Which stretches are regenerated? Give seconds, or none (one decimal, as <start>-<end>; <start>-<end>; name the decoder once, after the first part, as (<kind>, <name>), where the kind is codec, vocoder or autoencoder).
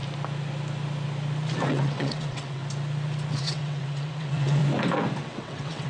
1.7-2.6 (vocoder, WaveNeXt); 3.4-4.6; 5.2-5.9